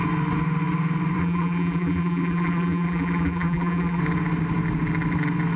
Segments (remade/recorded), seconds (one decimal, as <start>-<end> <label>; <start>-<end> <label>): 0.0-1.2 recorded; 1.2-4.0 remade; 4.0-5.6 recorded